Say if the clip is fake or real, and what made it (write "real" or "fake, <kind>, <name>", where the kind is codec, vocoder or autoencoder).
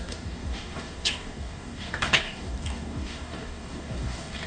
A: fake, codec, DAC